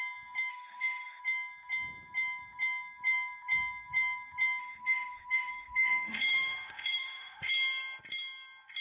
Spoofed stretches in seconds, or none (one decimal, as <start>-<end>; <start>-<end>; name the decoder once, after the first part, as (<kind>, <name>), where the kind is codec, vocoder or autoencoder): 0.5-1.2 (autoencoder, DAC-VAE); 4.6-7.5